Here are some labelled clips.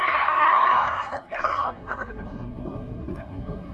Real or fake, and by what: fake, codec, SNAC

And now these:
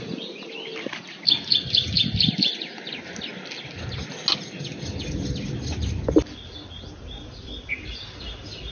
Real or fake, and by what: real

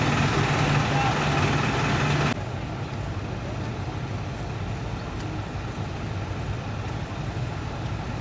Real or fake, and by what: real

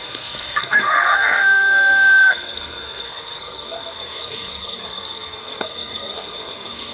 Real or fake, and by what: fake, codec, SNAC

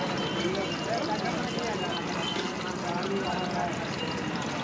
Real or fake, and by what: real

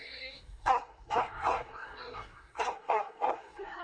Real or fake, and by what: fake, codec, SNAC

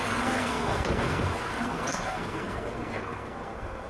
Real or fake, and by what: fake, codec, SNAC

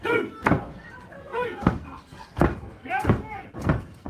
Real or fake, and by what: fake, codec, SNAC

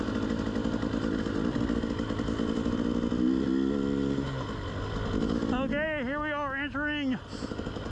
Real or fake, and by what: real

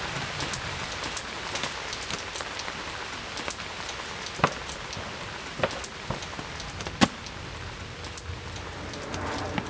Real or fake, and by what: real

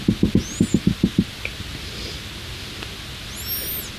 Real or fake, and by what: real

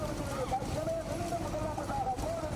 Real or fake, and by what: real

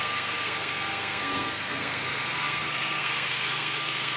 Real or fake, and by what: fake, codec, SNAC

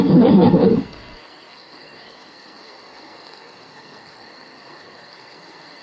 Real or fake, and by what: fake, codec, SNAC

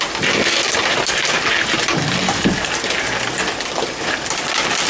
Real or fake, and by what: real